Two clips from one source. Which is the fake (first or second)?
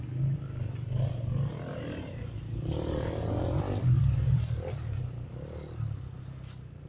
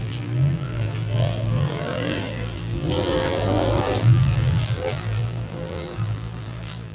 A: second